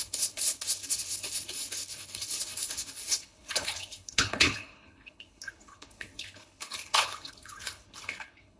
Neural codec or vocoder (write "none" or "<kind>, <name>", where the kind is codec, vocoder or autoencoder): codec, HILCodec